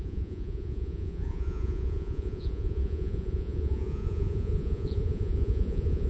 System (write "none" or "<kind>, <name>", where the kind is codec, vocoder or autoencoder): vocoder, Vocos